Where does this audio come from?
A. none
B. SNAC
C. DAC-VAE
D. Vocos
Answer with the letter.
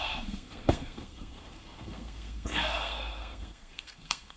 B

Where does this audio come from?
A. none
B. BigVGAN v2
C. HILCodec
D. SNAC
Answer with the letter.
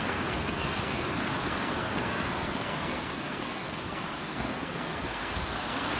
D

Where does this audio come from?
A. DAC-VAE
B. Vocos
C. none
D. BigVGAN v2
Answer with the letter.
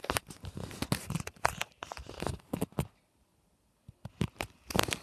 C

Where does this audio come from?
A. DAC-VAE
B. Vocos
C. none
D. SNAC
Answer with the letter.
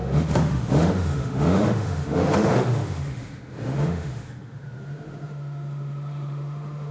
A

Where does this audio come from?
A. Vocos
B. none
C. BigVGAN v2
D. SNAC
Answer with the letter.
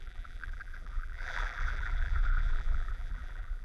C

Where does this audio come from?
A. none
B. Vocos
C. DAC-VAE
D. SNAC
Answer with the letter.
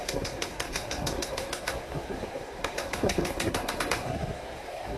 D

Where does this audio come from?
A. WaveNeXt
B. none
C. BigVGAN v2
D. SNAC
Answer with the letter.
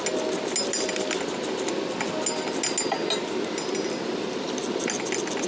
B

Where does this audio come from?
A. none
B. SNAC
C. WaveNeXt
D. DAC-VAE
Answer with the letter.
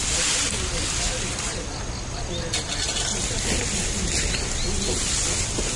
A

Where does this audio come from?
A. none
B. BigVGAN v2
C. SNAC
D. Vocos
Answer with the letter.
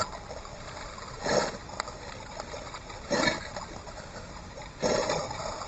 A